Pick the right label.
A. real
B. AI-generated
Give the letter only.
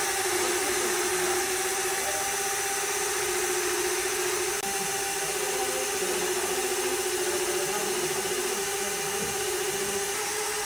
A